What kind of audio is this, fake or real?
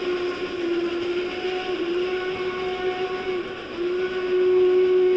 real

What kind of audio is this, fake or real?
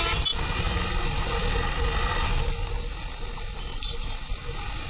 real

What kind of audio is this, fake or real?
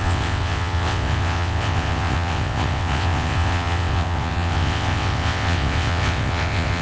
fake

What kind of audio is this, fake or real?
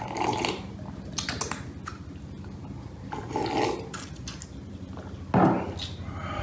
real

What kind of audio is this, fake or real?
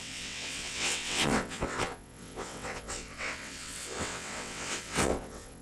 fake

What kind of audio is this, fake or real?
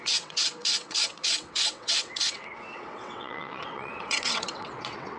fake